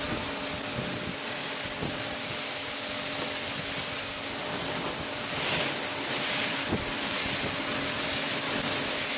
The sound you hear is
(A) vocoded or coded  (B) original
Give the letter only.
B